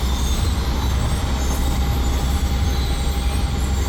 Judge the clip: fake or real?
real